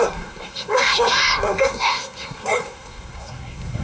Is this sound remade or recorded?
remade